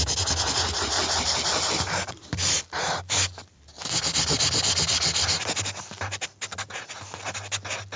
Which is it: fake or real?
real